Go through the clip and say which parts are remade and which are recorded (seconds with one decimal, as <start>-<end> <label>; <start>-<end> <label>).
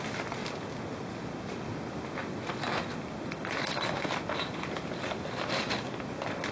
0.0-6.5 recorded